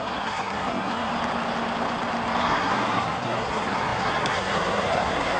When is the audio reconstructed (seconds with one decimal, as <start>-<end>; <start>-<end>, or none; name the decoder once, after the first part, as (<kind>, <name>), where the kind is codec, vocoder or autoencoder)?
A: 0.0-1.1 (codec, SNAC); 2.4-5.4